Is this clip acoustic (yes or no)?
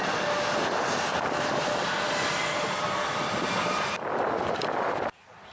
yes